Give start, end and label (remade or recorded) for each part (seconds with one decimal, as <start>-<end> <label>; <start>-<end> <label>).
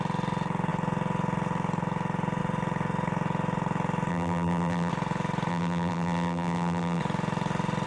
0.0-4.1 recorded; 4.1-4.9 remade; 4.9-5.5 recorded; 5.5-7.0 remade; 7.0-7.9 recorded